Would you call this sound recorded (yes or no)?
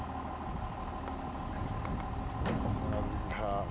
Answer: yes